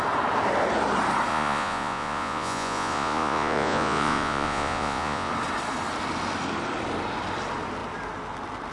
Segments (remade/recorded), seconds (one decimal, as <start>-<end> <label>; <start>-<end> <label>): 0.0-1.3 recorded; 1.3-5.3 remade; 5.3-8.7 recorded